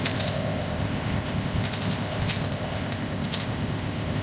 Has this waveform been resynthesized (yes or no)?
yes